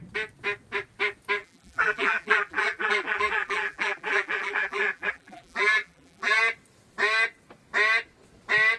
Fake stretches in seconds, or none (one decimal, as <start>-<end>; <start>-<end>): 1.4-6.4